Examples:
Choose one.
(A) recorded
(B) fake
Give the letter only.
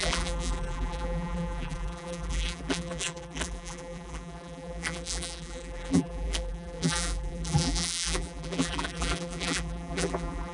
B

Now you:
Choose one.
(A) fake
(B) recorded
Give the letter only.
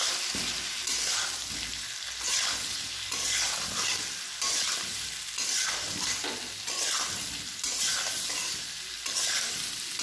B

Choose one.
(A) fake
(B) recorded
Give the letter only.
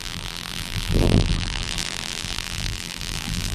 A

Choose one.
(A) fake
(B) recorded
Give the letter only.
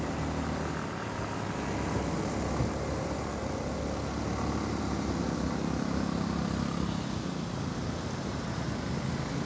B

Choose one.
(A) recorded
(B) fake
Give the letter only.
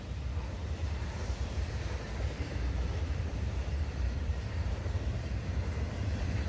B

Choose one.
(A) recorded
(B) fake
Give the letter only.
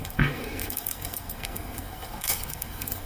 B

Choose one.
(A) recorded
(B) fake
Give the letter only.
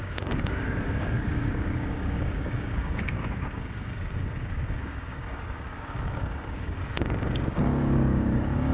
B